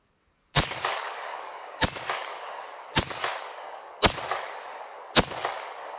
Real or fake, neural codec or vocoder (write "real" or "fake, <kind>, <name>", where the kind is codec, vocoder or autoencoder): fake, codec, DAC